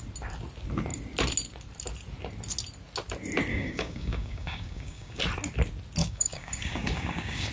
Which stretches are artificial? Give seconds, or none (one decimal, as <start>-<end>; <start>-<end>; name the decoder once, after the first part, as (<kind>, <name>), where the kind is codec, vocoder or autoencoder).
3.5-5.2 (codec, DAC); 6.0-7.5